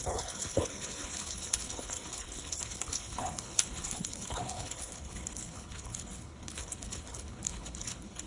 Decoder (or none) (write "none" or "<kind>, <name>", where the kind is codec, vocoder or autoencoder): codec, HILCodec